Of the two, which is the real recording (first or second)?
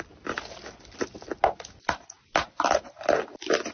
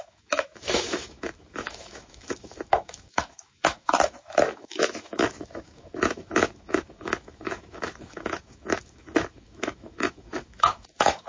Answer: first